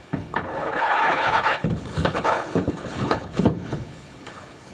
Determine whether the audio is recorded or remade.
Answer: remade